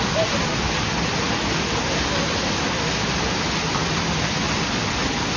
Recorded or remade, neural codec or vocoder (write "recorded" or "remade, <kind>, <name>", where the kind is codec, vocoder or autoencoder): recorded